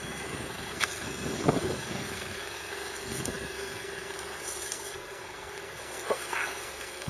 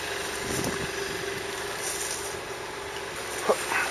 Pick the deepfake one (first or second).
first